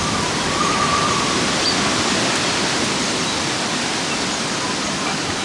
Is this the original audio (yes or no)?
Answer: yes